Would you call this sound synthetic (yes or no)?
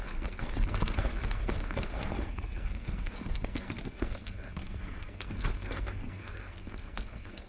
yes